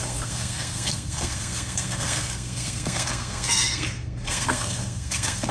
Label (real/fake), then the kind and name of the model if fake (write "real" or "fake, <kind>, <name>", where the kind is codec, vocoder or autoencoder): fake, codec, SNAC